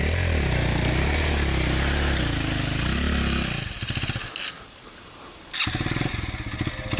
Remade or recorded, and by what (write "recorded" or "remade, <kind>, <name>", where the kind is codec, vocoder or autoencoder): recorded